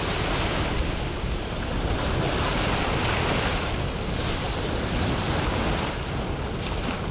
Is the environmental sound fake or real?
real